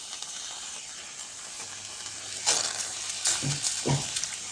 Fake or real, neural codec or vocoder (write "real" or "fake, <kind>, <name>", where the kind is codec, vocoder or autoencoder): real